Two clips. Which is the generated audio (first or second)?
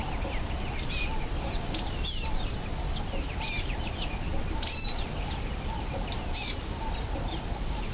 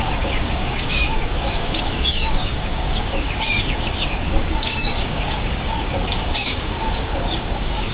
second